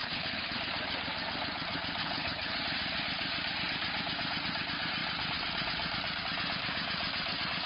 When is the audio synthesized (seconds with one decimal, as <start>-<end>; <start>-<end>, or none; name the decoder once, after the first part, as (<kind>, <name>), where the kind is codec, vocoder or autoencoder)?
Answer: 0.0-0.6 (codec, HILCodec); 2.0-2.6